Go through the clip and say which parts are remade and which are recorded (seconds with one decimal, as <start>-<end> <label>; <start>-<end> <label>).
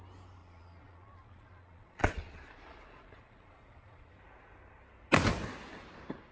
0.0-0.4 recorded; 0.4-4.1 remade; 4.1-6.3 recorded